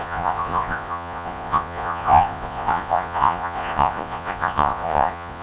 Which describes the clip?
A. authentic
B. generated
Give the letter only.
B